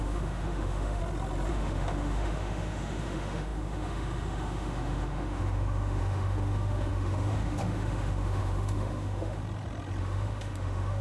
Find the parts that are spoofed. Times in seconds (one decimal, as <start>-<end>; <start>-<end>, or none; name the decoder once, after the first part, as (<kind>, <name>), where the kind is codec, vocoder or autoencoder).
0.0-1.0 (autoencoder, DAC-VAE); 1.5-9.4; 10.0-11.0